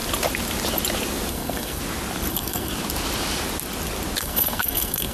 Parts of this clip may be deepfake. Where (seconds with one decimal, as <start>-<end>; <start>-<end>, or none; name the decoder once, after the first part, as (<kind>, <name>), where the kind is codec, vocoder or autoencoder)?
1.3-1.8 (codec, SNAC); 2.3-2.7; 4.2-5.1